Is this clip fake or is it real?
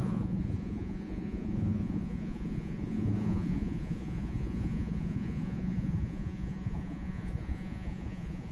fake